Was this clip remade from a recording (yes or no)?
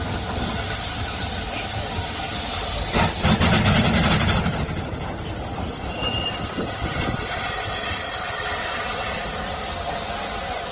no